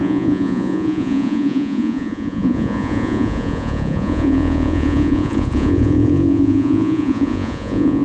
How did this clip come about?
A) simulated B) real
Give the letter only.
A